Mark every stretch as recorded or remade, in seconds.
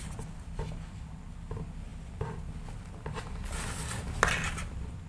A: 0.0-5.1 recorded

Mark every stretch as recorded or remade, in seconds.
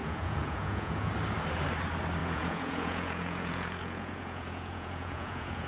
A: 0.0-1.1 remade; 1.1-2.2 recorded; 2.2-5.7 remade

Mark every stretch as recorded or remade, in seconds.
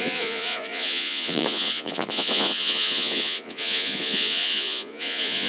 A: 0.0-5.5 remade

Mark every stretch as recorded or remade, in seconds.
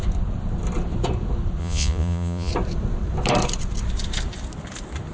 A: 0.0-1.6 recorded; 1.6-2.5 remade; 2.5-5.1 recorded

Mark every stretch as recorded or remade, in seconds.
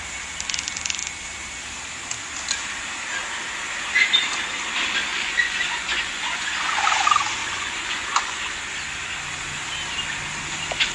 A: 0.0-5.1 recorded; 5.1-6.8 remade; 6.8-7.4 recorded; 7.4-8.6 remade; 8.6-10.9 recorded